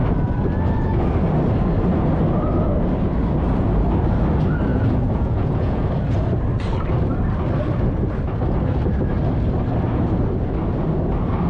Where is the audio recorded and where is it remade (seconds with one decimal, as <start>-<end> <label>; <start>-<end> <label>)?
0.0-4.7 recorded; 4.7-5.9 remade; 5.9-11.5 recorded